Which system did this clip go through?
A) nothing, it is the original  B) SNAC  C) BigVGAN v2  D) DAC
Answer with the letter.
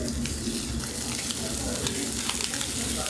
A